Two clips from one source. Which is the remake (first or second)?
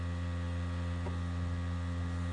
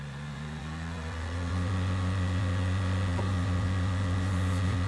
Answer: second